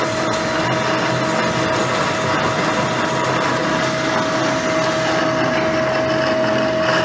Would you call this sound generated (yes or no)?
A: no